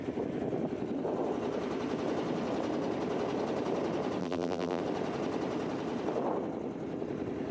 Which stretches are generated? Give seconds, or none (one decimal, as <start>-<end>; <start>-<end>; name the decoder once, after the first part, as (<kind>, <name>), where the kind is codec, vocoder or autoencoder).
4.2-4.8 (vocoder, BigVGAN v2)